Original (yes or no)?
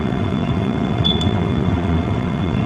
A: no